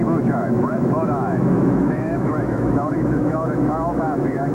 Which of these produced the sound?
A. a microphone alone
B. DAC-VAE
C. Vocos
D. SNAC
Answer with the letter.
B